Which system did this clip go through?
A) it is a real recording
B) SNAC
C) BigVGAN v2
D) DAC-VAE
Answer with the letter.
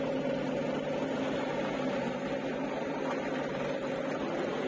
A